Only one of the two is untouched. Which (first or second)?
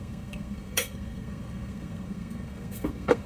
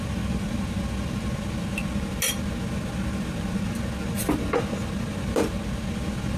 second